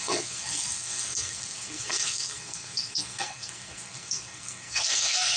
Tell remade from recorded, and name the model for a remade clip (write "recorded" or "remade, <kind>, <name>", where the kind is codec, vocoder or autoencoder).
remade, codec, SNAC